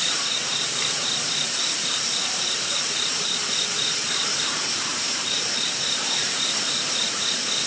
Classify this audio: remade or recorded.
remade